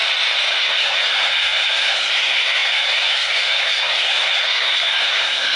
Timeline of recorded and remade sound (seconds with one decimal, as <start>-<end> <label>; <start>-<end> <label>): 0.0-0.6 recorded; 0.6-5.6 remade